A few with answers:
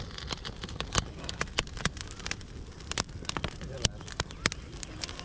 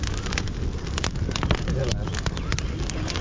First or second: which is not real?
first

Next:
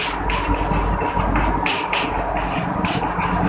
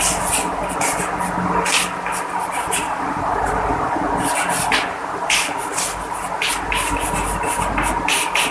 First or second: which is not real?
second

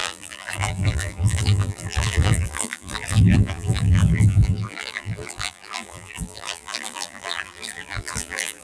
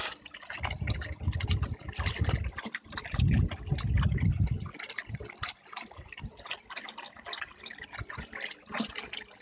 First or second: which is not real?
first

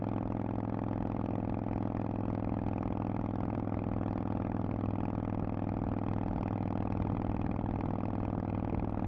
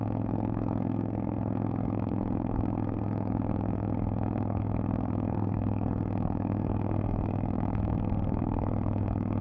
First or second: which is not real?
second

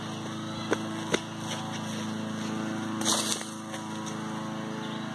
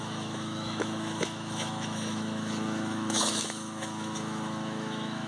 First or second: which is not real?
second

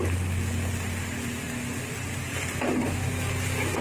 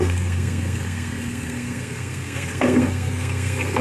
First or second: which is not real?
second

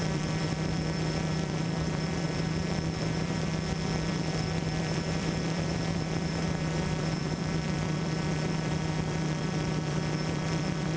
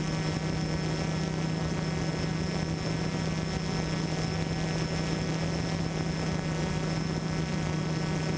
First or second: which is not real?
first